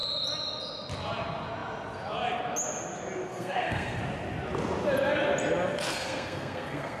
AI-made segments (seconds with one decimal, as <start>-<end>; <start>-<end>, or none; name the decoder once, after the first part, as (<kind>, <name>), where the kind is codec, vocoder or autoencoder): 3.3-4.0 (codec, SNAC); 5.9-7.0